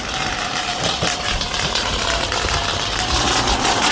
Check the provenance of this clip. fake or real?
fake